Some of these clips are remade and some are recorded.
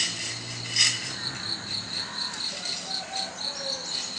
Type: recorded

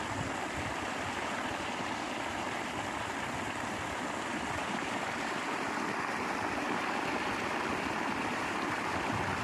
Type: recorded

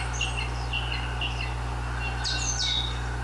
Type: recorded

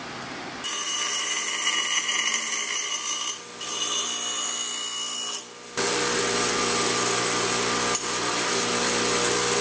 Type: recorded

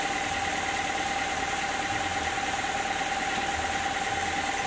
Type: recorded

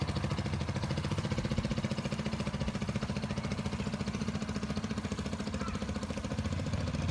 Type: recorded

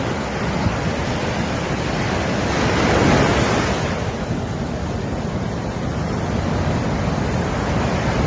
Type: recorded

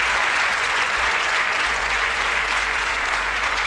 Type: remade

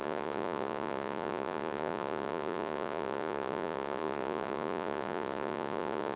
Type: remade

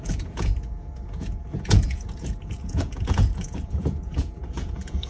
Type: remade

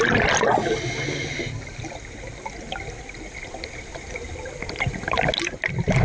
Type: recorded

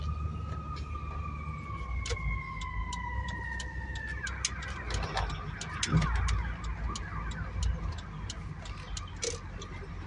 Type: recorded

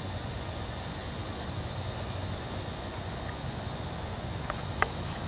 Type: remade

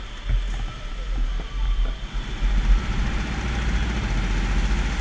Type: recorded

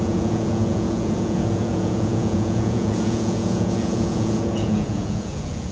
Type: remade